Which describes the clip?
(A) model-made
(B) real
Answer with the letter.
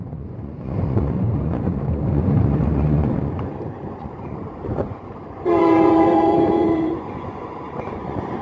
A